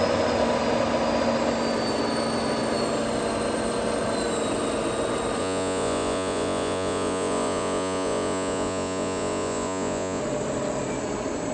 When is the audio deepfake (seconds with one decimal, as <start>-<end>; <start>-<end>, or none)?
5.4-10.2